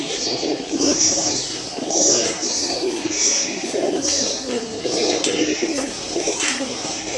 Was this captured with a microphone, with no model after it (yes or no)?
no